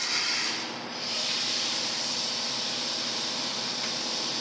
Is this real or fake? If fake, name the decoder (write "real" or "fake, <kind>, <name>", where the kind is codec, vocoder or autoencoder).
fake, vocoder, BigVGAN v2